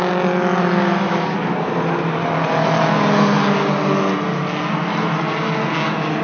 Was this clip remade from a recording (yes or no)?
no